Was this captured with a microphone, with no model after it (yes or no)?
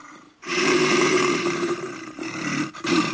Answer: no